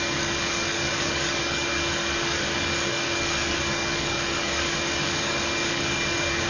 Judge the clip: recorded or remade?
remade